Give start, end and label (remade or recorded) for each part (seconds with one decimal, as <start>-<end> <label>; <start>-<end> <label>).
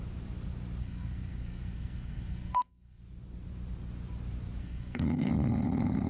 0.0-0.8 recorded; 0.8-3.0 remade; 3.0-4.6 recorded; 4.6-5.3 remade; 5.3-6.1 recorded